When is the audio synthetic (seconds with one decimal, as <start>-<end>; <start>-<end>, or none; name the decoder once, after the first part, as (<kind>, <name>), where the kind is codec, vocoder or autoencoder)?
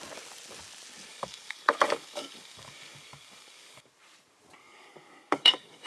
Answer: 1.1-3.9 (codec, DAC); 4.6-5.9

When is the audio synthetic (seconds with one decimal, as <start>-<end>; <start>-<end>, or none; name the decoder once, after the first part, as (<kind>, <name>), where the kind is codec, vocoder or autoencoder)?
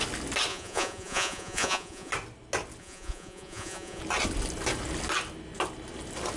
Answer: 0.5-2.1 (vocoder, Vocos); 2.8-4.0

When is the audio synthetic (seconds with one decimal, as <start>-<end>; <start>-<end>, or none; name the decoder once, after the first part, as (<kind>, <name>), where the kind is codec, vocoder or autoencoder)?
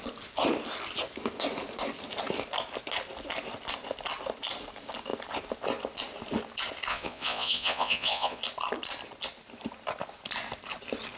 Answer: 6.9-8.4 (vocoder, Vocos)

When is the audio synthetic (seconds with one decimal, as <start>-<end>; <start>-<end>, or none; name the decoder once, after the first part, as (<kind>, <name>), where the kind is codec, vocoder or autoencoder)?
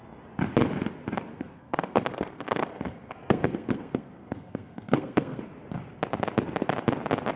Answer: 1.3-5.4 (codec, SNAC)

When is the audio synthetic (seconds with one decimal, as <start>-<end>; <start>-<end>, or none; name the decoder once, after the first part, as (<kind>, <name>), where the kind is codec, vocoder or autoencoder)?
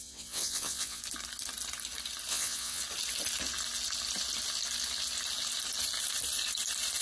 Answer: 0.0-1.0 (vocoder, WaveNeXt); 2.3-2.8